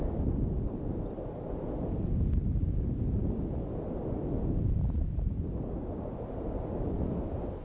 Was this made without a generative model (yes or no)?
yes